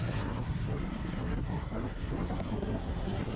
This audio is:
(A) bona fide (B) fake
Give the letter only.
B